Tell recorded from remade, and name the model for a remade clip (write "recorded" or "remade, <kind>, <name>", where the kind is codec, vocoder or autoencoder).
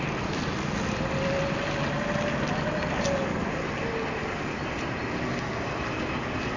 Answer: recorded